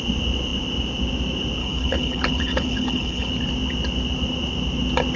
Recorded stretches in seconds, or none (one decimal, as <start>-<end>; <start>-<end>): 0.0-1.6; 3.3-5.2